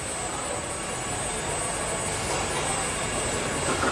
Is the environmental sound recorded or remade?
recorded